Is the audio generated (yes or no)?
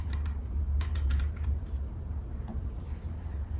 yes